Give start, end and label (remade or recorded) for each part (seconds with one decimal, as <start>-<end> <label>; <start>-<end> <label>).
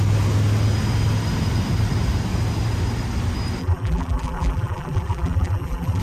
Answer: 0.0-3.6 recorded; 3.6-6.0 remade